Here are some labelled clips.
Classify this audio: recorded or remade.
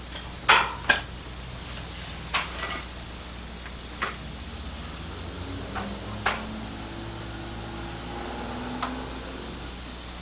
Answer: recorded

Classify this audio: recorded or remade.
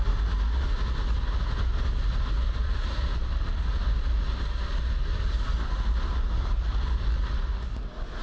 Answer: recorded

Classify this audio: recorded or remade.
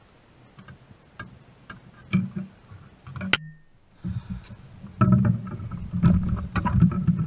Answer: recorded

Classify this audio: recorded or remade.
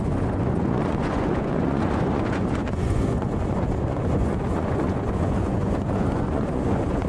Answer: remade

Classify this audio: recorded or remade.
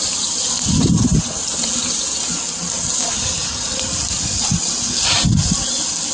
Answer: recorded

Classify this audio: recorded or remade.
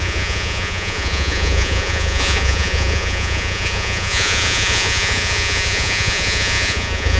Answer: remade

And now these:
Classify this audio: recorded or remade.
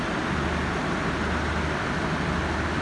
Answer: recorded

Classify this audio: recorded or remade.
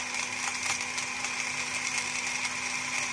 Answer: recorded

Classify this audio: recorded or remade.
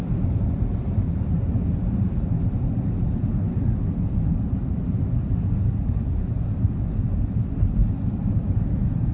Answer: recorded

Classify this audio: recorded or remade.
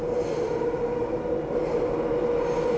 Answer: recorded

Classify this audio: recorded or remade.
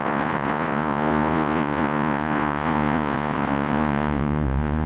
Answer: remade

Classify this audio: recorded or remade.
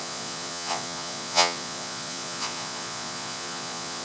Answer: remade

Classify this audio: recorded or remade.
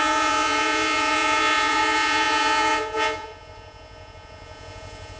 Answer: remade